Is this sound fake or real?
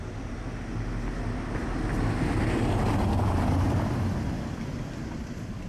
real